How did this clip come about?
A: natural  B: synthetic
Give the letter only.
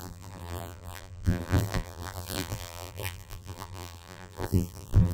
B